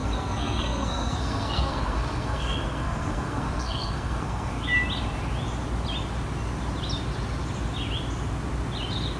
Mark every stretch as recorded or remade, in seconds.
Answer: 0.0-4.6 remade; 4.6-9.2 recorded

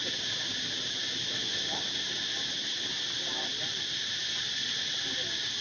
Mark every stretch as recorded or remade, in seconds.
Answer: 0.0-5.6 recorded